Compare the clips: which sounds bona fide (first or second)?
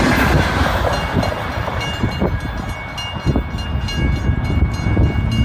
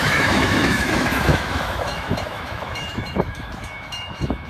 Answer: first